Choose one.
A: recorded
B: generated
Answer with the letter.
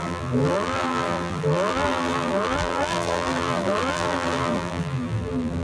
B